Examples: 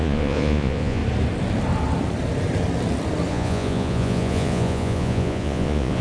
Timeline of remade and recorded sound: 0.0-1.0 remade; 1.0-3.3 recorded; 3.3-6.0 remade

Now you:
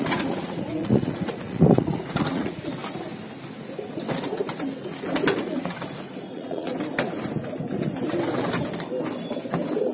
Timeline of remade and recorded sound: 0.0-2.8 remade; 2.8-5.4 recorded; 5.4-6.7 remade; 6.7-9.9 recorded